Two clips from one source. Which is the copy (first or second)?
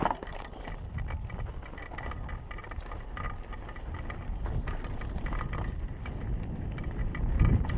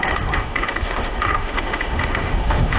second